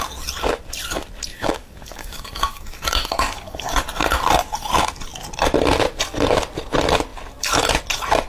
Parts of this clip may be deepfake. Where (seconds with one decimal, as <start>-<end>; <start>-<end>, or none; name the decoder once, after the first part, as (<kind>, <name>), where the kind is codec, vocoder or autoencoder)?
1.3-3.9 (codec, DAC)